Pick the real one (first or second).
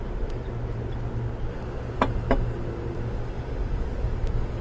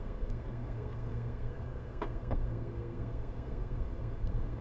first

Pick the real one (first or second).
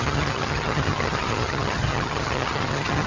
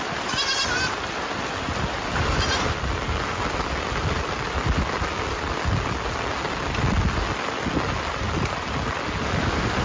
second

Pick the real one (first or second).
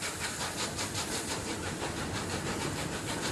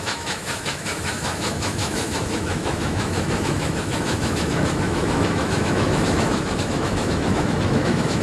first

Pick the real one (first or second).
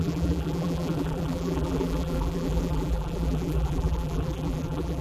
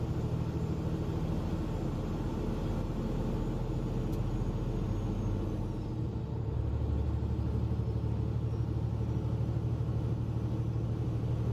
second